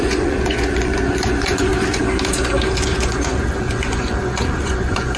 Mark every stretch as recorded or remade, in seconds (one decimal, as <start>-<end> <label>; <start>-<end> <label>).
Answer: 0.0-1.7 remade; 1.7-2.9 recorded; 2.9-5.2 remade